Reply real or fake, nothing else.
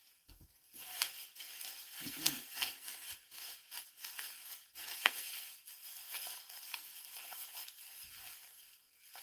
fake